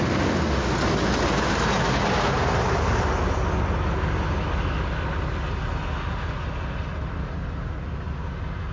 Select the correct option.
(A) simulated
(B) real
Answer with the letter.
B